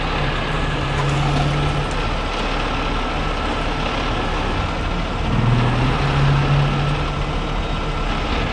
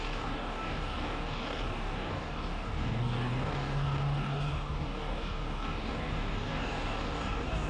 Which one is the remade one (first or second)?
second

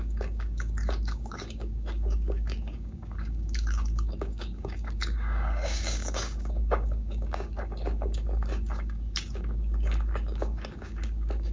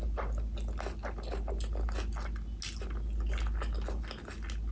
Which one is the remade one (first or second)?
first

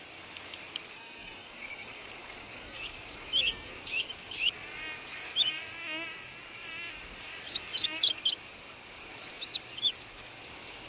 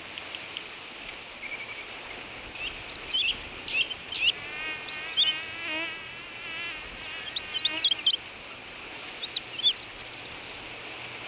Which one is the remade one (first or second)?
first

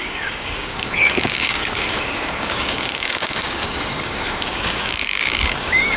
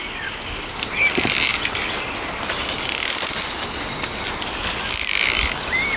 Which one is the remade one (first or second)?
first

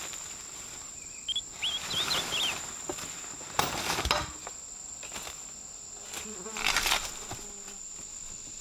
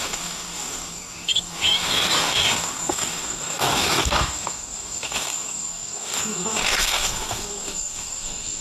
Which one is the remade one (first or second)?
second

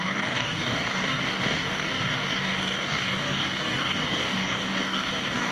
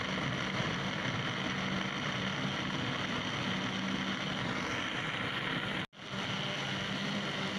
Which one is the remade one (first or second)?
first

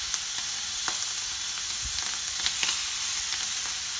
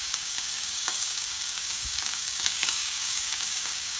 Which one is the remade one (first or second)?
second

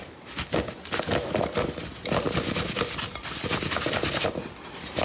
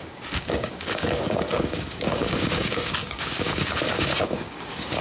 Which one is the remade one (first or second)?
second